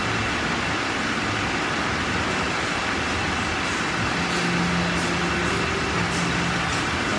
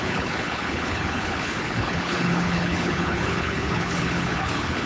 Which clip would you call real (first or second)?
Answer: first